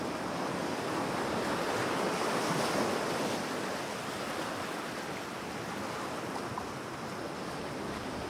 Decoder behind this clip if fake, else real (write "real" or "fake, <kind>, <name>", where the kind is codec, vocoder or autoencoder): real